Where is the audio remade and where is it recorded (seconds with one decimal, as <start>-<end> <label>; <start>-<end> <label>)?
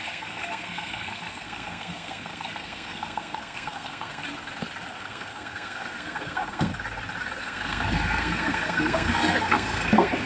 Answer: 0.0-4.2 remade; 4.2-4.9 recorded; 4.9-6.7 remade; 6.7-7.4 recorded; 7.4-10.3 remade